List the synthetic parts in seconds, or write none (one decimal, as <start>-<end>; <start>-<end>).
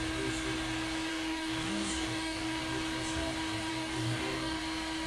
1.1-2.6; 3.7-4.6